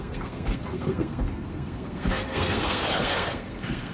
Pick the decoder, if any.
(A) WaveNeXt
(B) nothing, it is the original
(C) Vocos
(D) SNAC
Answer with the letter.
D